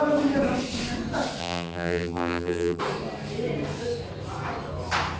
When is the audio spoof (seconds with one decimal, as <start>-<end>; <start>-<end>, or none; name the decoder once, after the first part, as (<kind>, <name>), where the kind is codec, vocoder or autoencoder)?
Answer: 1.4-2.8 (vocoder, BigVGAN v2)